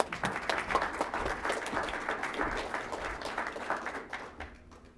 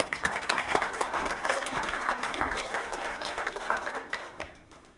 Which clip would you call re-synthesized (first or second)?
second